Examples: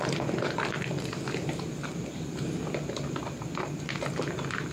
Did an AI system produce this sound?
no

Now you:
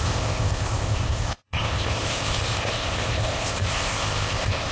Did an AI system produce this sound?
yes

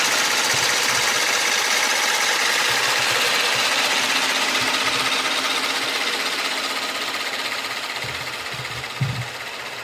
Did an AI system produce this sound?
no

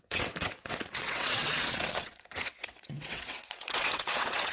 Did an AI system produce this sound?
yes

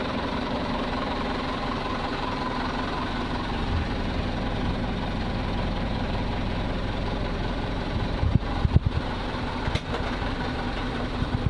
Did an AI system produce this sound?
yes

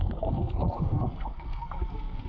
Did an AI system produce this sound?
yes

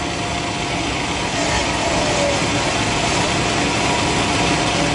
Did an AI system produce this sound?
no